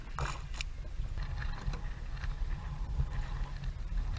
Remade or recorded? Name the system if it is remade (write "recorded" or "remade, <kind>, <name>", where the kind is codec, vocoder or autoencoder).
recorded